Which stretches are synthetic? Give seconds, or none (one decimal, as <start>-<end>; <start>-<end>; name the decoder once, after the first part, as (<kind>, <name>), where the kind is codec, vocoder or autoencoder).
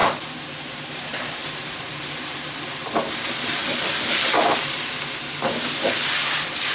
0.0-3.6 (vocoder, BigVGAN v2); 4.6-6.7